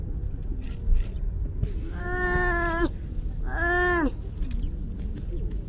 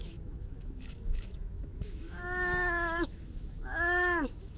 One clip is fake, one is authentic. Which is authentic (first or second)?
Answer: first